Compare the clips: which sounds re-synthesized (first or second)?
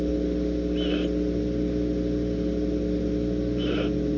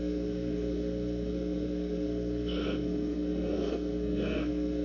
second